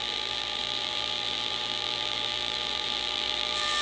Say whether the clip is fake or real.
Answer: fake